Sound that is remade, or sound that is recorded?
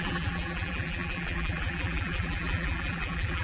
remade